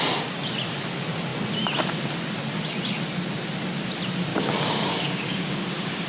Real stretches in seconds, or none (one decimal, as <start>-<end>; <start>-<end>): 0.0-4.3